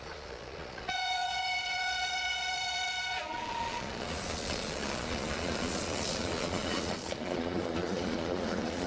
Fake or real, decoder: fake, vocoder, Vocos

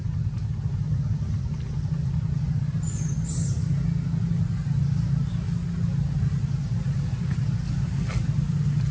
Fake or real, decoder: real